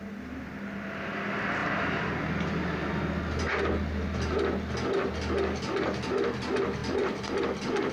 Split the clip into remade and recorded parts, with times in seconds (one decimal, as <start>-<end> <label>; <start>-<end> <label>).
0.0-1.6 recorded; 1.6-2.1 remade; 2.1-6.8 recorded; 6.8-7.9 remade